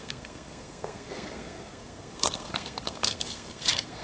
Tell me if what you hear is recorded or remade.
remade